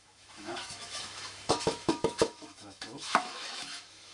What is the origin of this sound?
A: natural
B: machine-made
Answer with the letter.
B